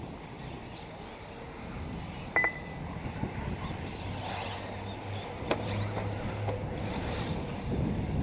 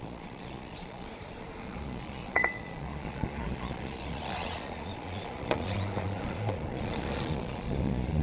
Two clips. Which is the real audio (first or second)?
first